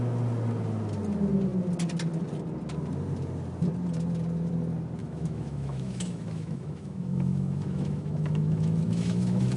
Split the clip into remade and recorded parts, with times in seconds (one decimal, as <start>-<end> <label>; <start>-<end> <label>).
0.0-5.0 recorded; 5.0-9.6 remade